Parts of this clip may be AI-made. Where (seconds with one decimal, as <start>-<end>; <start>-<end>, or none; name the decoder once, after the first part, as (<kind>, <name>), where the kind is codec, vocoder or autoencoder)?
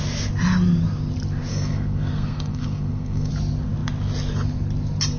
1.5-3.3 (codec, SNAC)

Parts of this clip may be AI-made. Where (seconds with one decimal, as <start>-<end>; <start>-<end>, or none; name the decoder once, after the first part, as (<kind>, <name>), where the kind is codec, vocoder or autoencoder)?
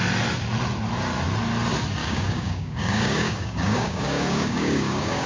2.0-5.3 (codec, DAC)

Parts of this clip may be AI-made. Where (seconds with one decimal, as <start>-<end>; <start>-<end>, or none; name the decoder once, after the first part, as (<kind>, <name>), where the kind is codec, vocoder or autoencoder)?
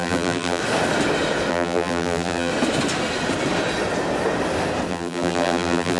0.0-0.6 (vocoder, BigVGAN v2); 1.5-2.5; 4.9-6.0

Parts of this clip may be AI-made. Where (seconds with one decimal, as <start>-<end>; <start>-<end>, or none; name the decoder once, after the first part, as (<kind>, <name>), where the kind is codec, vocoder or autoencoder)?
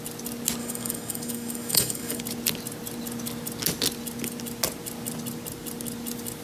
0.6-2.2 (codec, DAC)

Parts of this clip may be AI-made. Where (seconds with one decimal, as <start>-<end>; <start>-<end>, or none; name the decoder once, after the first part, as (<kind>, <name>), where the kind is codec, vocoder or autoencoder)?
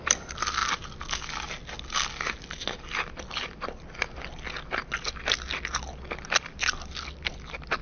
none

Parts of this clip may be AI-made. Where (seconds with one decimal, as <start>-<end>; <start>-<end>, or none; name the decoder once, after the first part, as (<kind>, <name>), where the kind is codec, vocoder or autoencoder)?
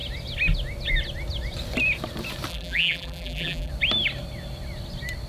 2.5-3.7 (vocoder, BigVGAN v2)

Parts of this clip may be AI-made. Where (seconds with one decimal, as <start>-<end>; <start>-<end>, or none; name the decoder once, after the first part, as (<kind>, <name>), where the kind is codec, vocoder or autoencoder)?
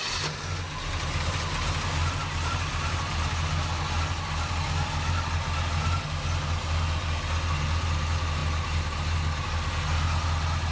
none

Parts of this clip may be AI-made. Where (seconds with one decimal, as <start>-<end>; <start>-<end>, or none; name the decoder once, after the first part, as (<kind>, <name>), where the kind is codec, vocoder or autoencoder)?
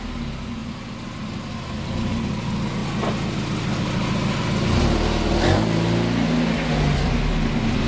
none